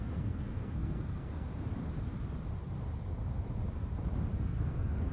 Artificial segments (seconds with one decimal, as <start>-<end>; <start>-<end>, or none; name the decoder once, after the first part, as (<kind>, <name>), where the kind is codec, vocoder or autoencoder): 0.0-1.5 (codec, SNAC); 4.4-5.1